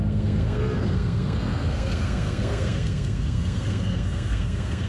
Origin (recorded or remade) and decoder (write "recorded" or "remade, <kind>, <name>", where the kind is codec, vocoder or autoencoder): remade, codec, SNAC